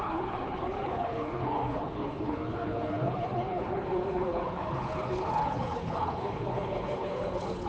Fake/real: fake